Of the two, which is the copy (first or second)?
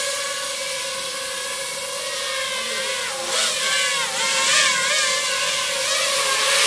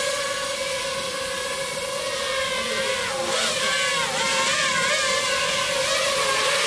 second